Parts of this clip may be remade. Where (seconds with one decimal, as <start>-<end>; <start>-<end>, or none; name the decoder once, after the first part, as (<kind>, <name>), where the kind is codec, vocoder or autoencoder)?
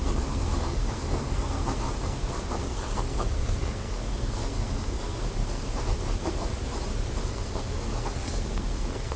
0.0-6.5 (codec, SNAC); 7.2-9.2